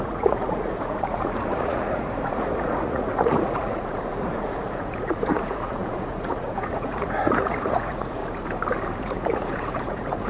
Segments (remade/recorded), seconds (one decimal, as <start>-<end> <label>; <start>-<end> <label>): 0.0-8.2 remade; 8.2-9.0 recorded; 9.0-10.3 remade